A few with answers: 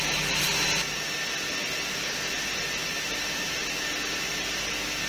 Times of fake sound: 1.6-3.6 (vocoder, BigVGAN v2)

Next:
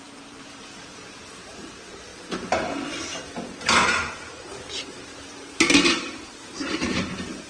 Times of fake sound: 0.0-2.1 (vocoder, BigVGAN v2); 4.1-7.5

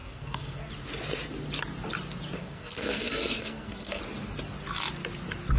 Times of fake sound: 0.0-0.7 (codec, SNAC); 2.4-4.0

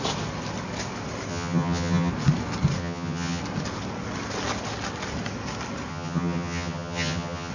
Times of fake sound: 1.3-2.1 (vocoder, HiFi-GAN); 2.8-3.4; 5.9-7.5

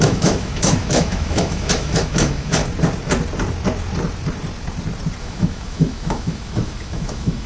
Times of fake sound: 0.0-2.6 (autoencoder, DAC-VAE); 5.2-7.5

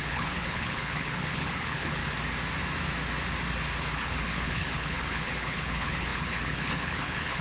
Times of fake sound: 0.0-2.0 (codec, HILCodec); 3.8-7.4

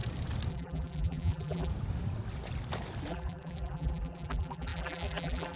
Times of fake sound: 0.5-1.7 (vocoder, BigVGAN v2); 3.1-5.6

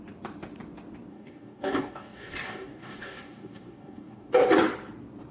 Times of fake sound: 1.1-4.3 (codec, DAC)